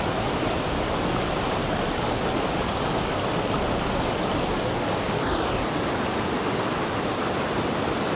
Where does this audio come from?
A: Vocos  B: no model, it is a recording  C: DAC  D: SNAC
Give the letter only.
B